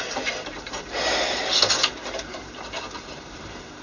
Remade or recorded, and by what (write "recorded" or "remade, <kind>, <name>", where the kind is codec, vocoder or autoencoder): remade, vocoder, BigVGAN v2